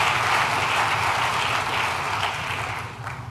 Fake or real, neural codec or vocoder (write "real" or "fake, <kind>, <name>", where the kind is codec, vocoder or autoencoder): real